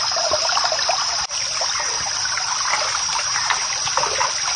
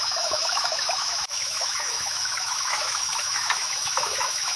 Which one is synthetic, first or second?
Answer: second